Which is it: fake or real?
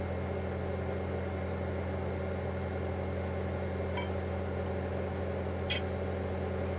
real